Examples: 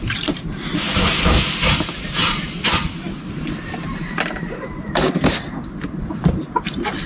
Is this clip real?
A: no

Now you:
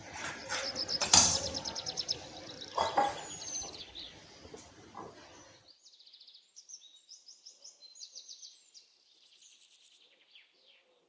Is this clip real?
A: no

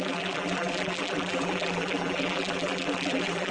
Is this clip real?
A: no